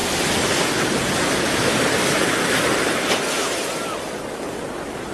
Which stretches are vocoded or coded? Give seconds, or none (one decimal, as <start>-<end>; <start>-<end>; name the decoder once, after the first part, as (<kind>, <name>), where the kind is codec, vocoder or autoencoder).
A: none